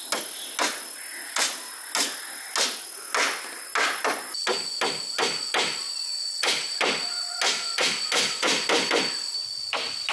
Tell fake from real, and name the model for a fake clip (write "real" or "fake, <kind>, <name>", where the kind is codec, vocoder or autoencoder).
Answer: real